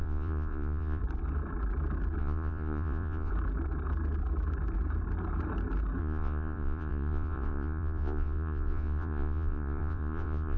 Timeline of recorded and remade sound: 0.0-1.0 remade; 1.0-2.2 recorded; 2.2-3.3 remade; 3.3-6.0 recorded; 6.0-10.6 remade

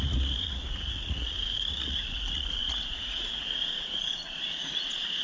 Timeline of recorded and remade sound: 0.0-5.2 remade

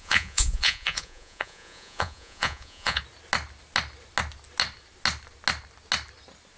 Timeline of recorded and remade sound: 0.0-3.0 remade; 3.0-6.6 recorded

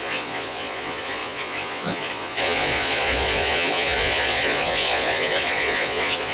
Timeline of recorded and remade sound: 0.0-6.3 remade

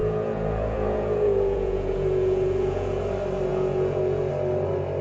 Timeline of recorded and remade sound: 0.0-3.0 remade; 3.0-3.5 recorded; 3.5-4.3 remade; 4.3-5.0 recorded

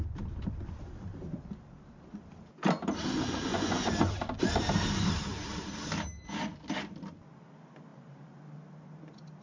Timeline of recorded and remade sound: 0.0-3.5 recorded; 3.5-4.1 remade; 4.1-9.4 recorded

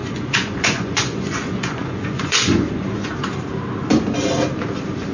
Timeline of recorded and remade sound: 0.0-3.1 remade; 3.1-5.1 recorded

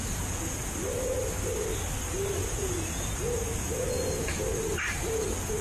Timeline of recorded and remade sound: 0.0-0.7 remade; 0.7-2.4 recorded; 2.4-4.4 remade; 4.4-5.6 recorded